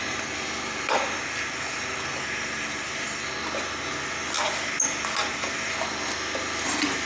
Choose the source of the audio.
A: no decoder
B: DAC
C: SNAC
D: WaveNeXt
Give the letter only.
A